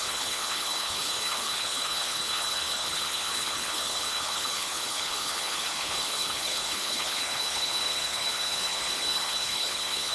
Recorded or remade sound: remade